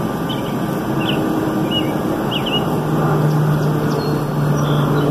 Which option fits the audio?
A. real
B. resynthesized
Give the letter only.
A